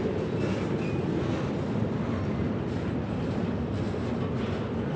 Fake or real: real